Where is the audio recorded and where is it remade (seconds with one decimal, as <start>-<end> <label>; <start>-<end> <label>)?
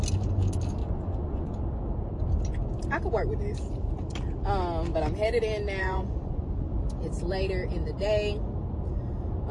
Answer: 0.0-0.8 recorded; 0.8-1.6 remade; 1.6-5.8 recorded; 5.8-6.6 remade; 6.6-9.5 recorded